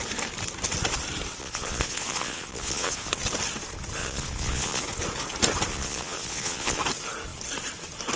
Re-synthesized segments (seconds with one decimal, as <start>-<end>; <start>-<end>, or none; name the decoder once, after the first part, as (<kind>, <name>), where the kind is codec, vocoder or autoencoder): 1.4-3.1 (vocoder, Vocos); 4.0-4.8; 5.7-6.8